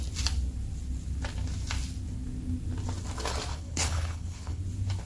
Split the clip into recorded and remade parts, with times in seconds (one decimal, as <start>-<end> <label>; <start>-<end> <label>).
0.0-3.5 recorded; 3.5-4.6 remade; 4.6-5.1 recorded